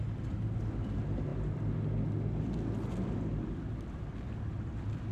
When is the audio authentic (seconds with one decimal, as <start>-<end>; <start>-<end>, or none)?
0.0-5.1